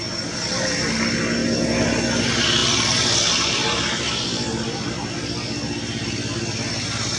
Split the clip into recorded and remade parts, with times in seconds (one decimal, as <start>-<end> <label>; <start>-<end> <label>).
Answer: 0.0-7.2 recorded

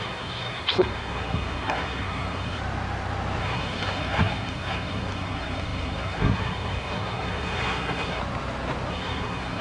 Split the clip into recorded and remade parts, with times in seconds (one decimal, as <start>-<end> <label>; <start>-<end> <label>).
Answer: 0.0-2.6 remade; 2.6-3.4 recorded; 3.4-8.2 remade; 8.2-8.9 recorded; 8.9-9.6 remade

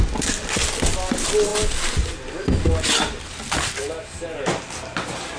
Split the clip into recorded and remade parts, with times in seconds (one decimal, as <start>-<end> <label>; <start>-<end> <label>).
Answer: 0.0-5.4 recorded

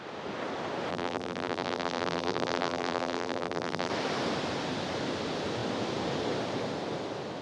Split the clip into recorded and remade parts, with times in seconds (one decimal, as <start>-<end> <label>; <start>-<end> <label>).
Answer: 0.0-0.9 recorded; 0.9-3.9 remade; 3.9-7.4 recorded